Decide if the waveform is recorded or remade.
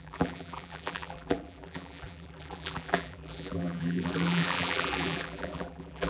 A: remade